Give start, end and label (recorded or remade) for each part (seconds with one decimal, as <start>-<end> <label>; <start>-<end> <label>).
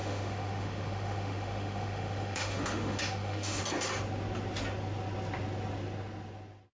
0.0-3.6 remade; 3.6-6.7 recorded